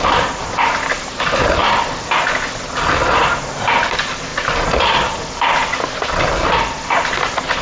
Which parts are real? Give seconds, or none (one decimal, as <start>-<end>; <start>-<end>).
0.0-7.6